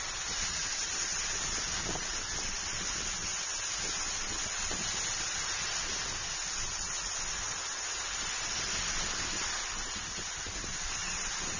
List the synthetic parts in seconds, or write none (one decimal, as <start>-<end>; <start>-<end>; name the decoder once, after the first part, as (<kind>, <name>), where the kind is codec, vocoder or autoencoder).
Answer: none